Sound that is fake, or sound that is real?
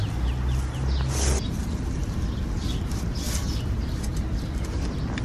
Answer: real